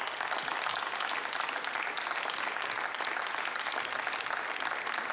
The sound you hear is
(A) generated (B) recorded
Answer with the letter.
B